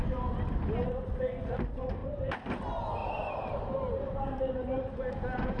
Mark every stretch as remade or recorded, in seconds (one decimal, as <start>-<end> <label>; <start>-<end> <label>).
0.0-2.0 recorded; 2.0-2.6 remade; 2.6-3.0 recorded; 3.0-5.6 remade